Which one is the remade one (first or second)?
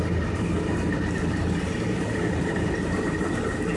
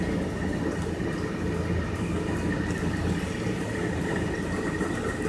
first